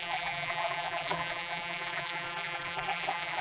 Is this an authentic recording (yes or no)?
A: no